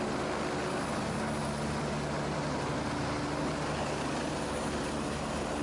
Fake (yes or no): no